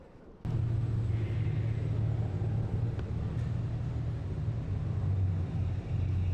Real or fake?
real